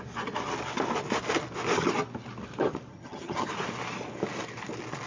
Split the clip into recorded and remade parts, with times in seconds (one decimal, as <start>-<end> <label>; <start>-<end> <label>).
0.0-2.9 recorded; 2.9-3.5 remade; 3.5-5.1 recorded